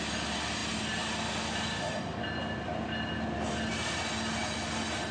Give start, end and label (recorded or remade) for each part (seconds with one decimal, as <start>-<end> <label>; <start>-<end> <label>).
0.0-5.1 recorded